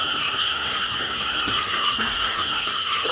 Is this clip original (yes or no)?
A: no